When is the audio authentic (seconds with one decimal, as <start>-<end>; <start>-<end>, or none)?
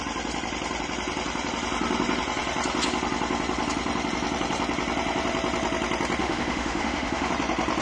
0.0-6.2; 7.3-7.8